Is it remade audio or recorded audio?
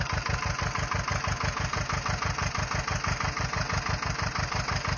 recorded